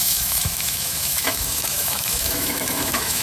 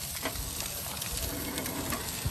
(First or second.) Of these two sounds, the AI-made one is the first